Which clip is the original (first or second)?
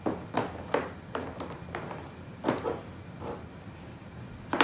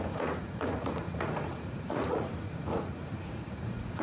first